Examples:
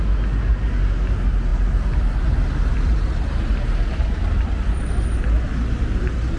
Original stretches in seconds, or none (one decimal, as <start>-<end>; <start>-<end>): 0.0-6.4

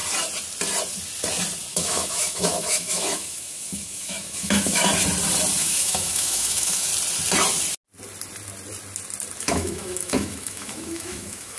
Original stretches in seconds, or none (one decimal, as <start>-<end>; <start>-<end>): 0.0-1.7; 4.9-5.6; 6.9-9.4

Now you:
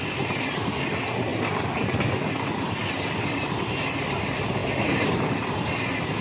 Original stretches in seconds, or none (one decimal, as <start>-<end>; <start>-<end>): 0.0-6.2

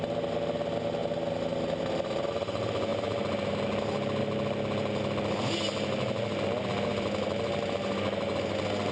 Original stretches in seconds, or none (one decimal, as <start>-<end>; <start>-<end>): 0.0-8.9